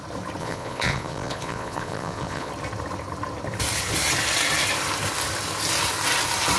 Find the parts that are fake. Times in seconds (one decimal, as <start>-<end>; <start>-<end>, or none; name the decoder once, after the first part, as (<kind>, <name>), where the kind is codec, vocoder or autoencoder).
0.4-2.5 (vocoder, Vocos)